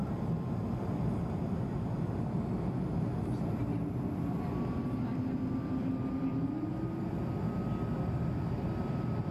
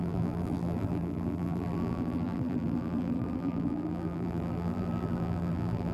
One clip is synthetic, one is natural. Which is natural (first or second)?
first